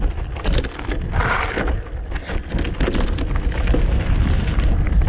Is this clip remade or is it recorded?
recorded